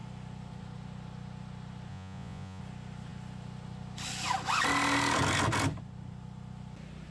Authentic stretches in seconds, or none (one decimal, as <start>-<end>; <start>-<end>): 0.0-1.9; 2.6-7.1